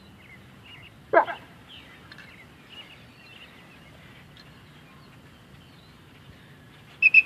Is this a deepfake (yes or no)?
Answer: no